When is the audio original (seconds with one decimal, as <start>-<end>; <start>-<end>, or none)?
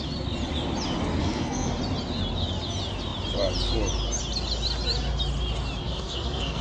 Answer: 0.0-1.2; 1.7-5.8